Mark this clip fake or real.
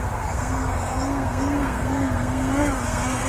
fake